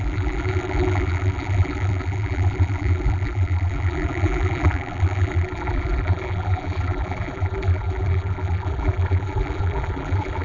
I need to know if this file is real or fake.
fake